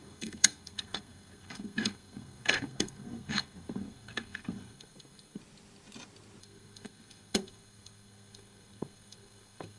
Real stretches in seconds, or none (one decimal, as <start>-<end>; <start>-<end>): 5.4-6.4